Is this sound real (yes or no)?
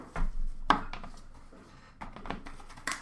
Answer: yes